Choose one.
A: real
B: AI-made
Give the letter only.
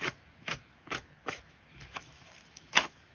B